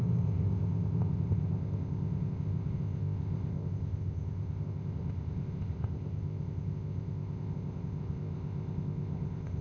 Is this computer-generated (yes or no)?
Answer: yes